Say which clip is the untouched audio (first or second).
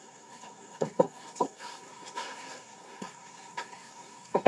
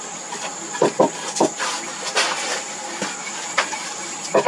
second